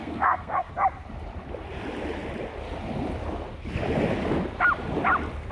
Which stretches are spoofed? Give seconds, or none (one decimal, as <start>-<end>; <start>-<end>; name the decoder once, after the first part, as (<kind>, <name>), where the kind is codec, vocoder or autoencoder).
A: 0.0-0.7 (codec, SNAC)